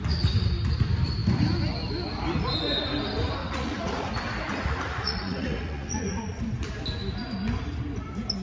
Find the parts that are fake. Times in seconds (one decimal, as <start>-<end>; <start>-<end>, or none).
3.4-4.1; 4.5-6.4